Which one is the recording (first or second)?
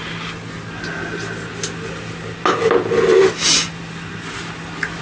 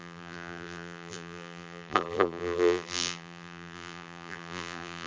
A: first